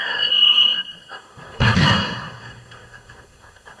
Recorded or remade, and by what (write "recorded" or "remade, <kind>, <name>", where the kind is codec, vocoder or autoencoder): remade, codec, SNAC